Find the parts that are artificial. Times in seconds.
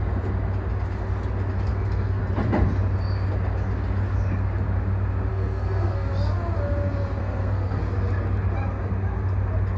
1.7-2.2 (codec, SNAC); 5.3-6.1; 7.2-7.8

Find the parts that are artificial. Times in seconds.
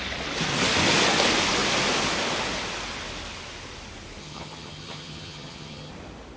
4.2-5.9 (vocoder, HiFi-GAN)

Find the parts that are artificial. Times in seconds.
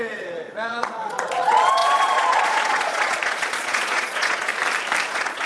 0.0-4.5 (vocoder, Vocos); 5.1-5.5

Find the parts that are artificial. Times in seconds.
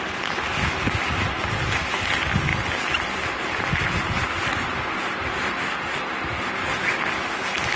none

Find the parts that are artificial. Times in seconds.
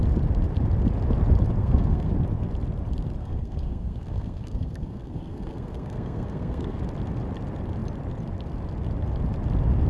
1.6-2.1 (codec, SNAC); 3.2-6.8